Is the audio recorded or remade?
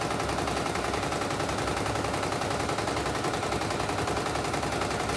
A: recorded